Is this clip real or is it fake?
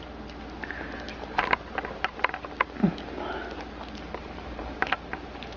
real